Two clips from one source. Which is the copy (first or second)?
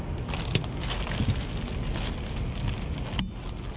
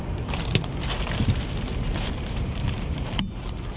second